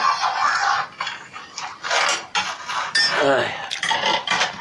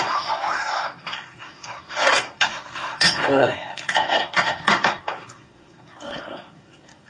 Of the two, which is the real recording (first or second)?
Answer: first